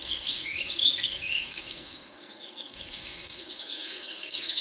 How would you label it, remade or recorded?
remade